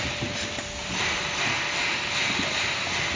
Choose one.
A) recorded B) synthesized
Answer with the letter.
A